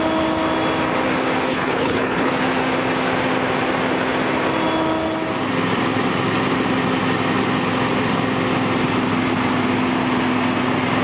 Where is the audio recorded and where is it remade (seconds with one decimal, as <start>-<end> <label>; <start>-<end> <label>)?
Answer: 0.0-1.5 recorded; 1.5-2.3 remade; 2.3-11.0 recorded